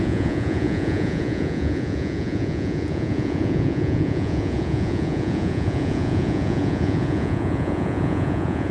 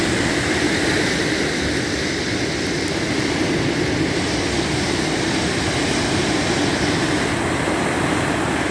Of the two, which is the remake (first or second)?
first